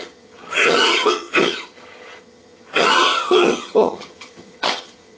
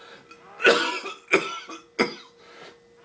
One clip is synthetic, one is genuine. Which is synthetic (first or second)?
first